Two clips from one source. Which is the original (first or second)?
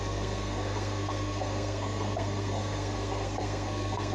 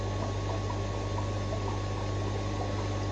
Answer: second